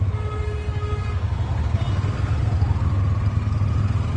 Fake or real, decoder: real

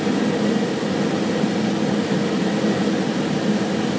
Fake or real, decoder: real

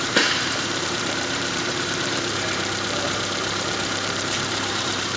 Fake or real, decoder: fake, vocoder, BigVGAN v2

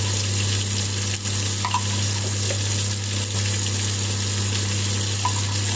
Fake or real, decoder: real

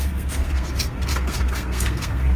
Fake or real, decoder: fake, codec, SNAC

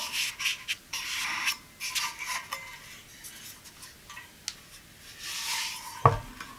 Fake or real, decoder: real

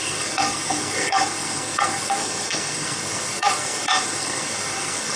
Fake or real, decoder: fake, codec, SNAC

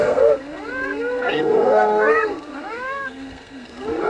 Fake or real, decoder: fake, codec, SNAC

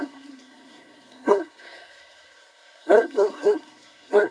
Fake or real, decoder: fake, codec, SNAC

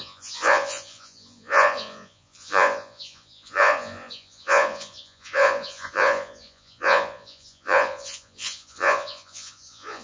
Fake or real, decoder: fake, vocoder, Vocos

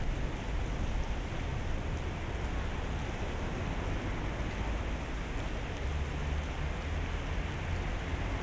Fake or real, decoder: real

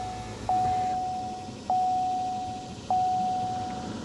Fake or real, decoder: real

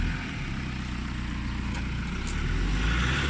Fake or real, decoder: real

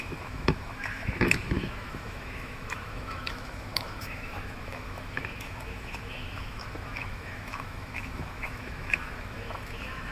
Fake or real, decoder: fake, autoencoder, DAC-VAE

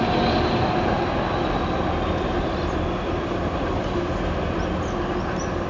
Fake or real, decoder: real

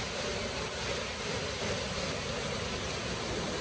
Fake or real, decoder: real